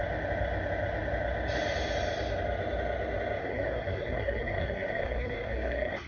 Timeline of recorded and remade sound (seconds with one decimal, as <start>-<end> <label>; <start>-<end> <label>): 0.0-3.4 recorded; 3.4-6.1 remade